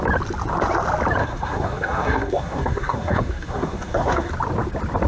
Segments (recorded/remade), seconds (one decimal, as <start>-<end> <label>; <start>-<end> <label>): 0.0-1.2 recorded; 1.2-4.3 remade; 4.3-5.1 recorded